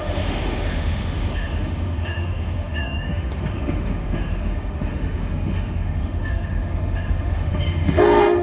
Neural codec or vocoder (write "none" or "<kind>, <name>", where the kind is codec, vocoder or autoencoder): autoencoder, DAC-VAE